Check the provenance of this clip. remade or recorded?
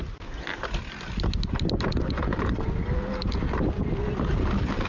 recorded